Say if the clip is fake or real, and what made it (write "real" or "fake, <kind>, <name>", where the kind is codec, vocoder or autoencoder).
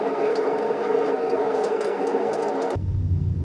fake, codec, SNAC